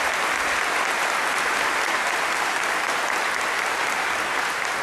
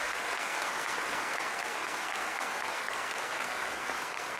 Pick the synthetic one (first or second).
second